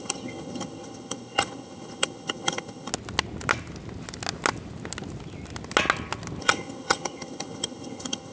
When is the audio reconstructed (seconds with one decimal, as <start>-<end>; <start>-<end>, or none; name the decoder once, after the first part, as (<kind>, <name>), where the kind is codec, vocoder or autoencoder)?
0.0-2.9 (vocoder, HiFi-GAN); 6.4-8.3